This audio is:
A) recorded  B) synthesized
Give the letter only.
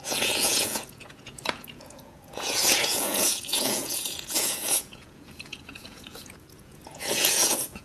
B